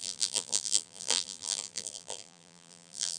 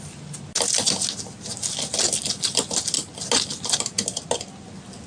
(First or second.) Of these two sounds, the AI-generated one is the first